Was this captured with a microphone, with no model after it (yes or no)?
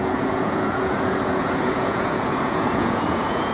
no